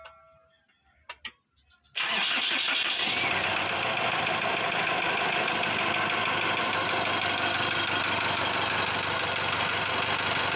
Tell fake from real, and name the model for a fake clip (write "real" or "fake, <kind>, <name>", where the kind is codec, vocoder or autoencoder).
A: real